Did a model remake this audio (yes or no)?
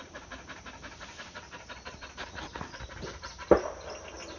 yes